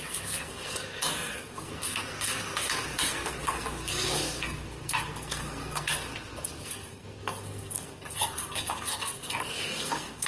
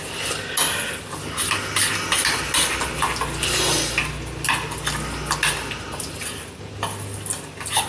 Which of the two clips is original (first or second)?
second